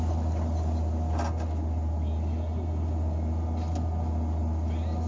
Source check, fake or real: real